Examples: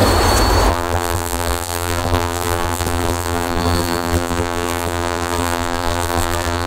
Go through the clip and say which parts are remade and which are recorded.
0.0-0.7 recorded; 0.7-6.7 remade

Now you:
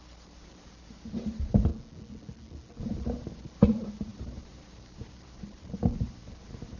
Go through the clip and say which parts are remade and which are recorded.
0.0-1.7 remade; 1.7-2.8 recorded; 2.8-6.8 remade

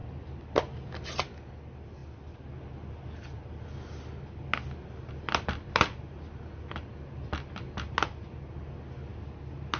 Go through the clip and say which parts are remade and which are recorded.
0.0-9.8 recorded

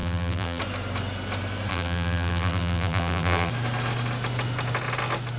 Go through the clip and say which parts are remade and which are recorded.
0.0-0.6 remade; 0.6-1.7 recorded; 1.7-3.5 remade; 3.5-5.4 recorded